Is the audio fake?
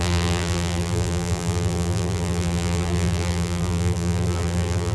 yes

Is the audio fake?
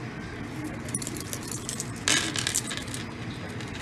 no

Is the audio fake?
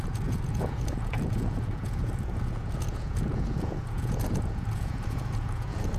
yes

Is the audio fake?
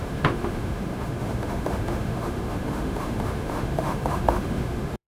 yes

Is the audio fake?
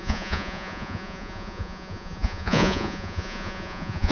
yes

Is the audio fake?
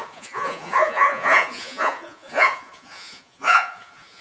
yes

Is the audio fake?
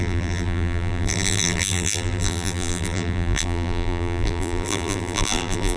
yes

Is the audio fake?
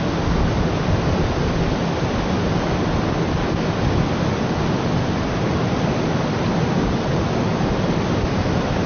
no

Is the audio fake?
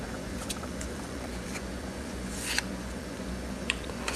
yes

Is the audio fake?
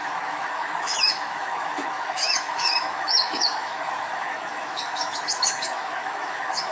yes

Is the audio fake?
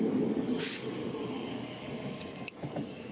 yes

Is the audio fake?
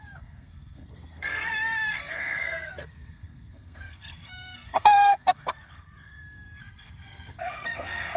yes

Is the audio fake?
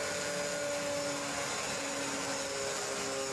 no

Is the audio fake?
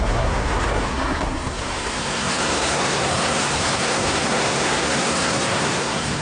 yes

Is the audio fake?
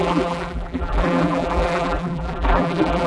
yes